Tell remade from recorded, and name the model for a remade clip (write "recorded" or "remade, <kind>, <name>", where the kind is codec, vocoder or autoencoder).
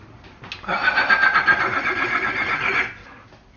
recorded